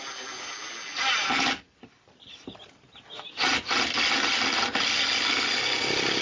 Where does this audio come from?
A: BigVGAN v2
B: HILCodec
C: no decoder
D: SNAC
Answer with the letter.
C